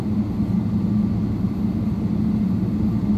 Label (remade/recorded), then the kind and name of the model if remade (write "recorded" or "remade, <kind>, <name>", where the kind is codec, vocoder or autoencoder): recorded